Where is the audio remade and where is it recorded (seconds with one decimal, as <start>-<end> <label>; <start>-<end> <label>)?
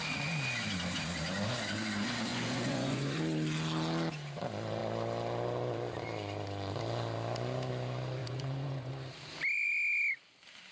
0.0-2.3 recorded; 2.3-3.2 remade; 3.2-8.2 recorded; 8.2-8.9 remade; 8.9-10.7 recorded